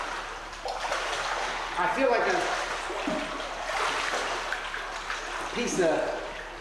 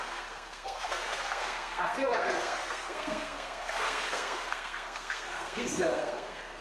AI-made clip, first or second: second